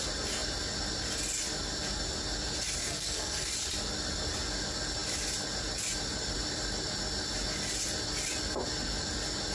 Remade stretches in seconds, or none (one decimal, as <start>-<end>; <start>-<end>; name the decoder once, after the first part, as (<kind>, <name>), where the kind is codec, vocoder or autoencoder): 2.8-3.5 (codec, SNAC)

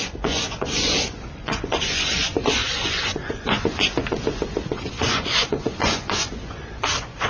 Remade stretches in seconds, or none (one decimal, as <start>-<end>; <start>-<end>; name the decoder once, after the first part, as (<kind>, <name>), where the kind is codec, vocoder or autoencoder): 0.0-7.3 (vocoder, Vocos)

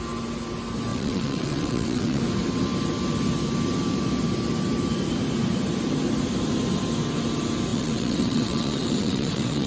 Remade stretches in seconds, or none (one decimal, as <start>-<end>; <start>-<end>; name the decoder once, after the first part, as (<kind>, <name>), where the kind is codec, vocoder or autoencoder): 0.9-2.2 (vocoder, WaveNeXt); 7.7-9.7